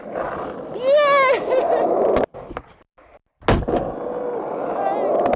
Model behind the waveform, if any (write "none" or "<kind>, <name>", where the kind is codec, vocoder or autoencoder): none